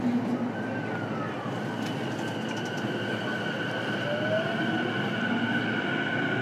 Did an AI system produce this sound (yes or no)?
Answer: no